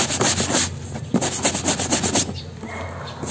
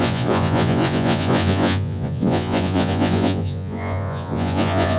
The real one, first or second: first